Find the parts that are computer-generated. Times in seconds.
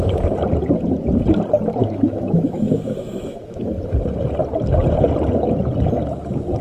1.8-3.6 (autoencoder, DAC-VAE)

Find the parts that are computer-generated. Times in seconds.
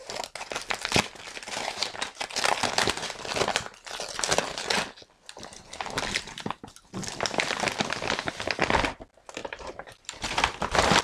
none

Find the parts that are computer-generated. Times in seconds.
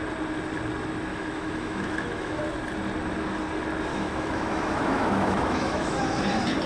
1.1-2.4 (autoencoder, DAC-VAE); 3.9-6.0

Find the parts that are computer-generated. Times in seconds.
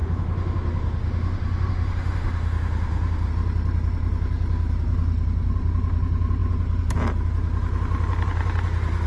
0.0-3.3 (autoencoder, DAC-VAE)